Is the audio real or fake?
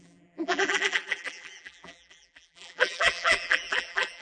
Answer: fake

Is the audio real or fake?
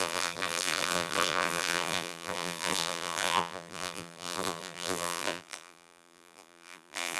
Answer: fake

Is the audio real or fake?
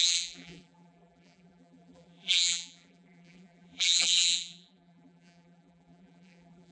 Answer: fake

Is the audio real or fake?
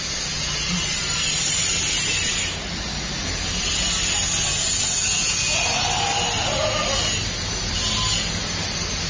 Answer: real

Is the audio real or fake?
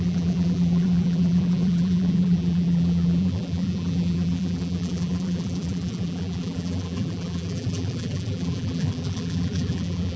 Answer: fake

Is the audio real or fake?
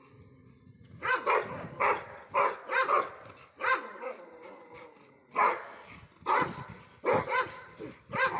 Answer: real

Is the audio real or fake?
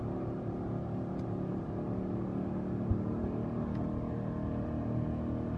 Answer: real